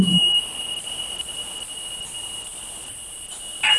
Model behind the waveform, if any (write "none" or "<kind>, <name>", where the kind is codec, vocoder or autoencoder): none